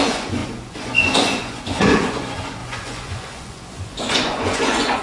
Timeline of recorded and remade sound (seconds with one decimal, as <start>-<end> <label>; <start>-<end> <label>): 0.0-5.0 remade